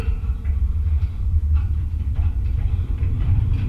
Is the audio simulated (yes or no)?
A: yes